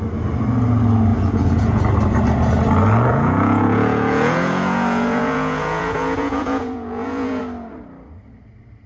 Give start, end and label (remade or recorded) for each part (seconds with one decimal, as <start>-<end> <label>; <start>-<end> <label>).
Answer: 0.0-1.1 recorded; 1.1-1.8 remade; 1.8-3.1 recorded; 3.1-7.4 remade; 7.4-8.9 recorded